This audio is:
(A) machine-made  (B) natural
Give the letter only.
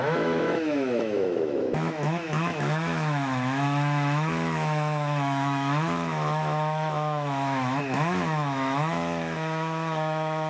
A